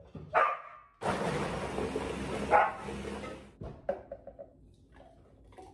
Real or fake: real